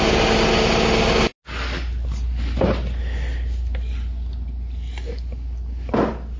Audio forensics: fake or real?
real